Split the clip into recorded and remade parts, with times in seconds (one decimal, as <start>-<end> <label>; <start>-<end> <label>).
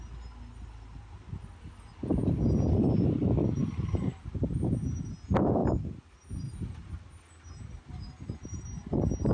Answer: 0.0-9.3 recorded